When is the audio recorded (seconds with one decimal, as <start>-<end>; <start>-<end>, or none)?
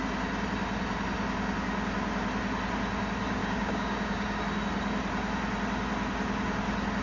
0.0-3.4; 4.4-7.0